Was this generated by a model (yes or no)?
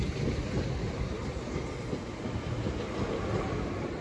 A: no